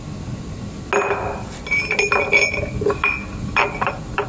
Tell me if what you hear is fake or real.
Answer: real